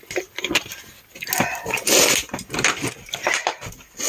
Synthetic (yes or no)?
no